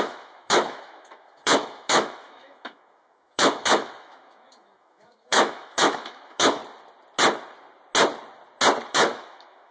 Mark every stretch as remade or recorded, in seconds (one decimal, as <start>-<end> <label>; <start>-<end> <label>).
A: 0.0-6.6 remade; 6.6-8.9 recorded; 8.9-9.7 remade